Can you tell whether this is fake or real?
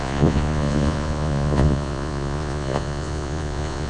fake